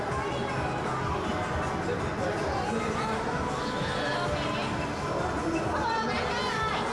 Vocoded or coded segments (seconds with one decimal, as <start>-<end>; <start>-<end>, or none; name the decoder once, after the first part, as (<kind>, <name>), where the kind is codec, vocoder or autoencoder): 1.3-5.4 (vocoder, BigVGAN v2)